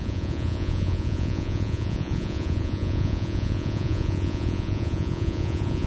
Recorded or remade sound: remade